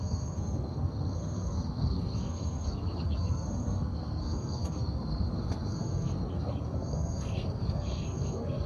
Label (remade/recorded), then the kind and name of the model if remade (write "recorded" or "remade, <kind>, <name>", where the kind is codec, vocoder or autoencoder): remade, codec, SNAC